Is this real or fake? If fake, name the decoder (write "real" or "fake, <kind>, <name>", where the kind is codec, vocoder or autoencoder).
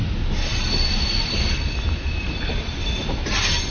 real